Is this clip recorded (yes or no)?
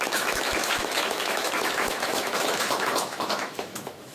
no